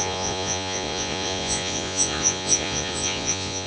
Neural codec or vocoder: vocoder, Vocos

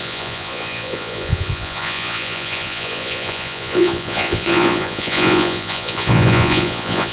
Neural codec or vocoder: vocoder, Vocos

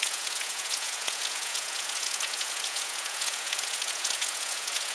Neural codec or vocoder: vocoder, Vocos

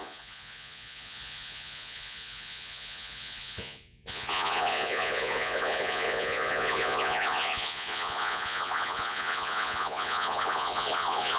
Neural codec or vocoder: vocoder, Vocos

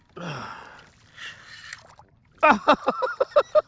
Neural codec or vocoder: none